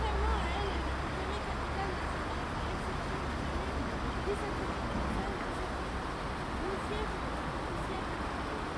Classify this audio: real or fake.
real